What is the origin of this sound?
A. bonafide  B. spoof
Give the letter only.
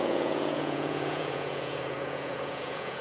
B